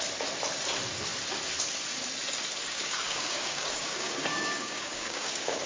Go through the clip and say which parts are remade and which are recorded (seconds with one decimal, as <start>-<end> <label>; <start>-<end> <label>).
0.0-2.6 recorded; 2.6-5.7 remade